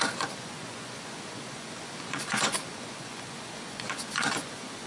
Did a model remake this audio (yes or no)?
yes